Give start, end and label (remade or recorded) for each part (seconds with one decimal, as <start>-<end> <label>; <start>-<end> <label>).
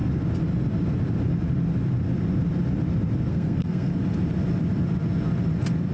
0.0-3.3 recorded; 3.3-3.9 remade; 3.9-5.9 recorded